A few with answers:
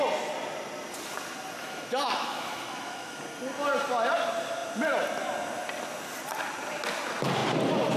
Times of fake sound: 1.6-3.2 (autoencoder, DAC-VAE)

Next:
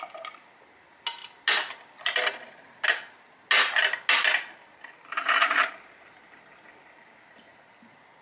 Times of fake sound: none

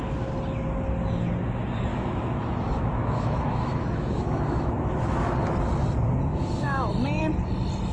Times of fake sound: 1.9-5.3 (autoencoder, DAC-VAE); 6.3-6.9

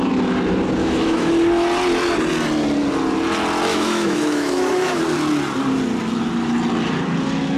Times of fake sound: 0.8-1.3 (autoencoder, DAC-VAE); 3.7-5.0

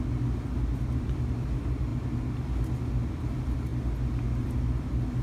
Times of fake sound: none

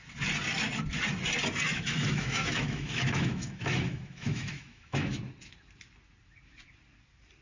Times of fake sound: 1.7-5.2 (autoencoder, DAC-VAE)

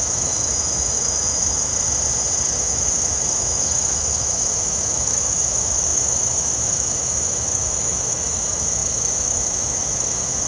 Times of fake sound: 0.0-1.7 (autoencoder, DAC-VAE); 2.6-10.5